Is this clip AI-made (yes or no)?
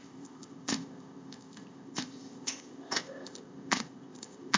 yes